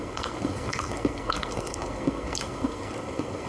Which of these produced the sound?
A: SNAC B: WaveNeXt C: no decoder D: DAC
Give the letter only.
A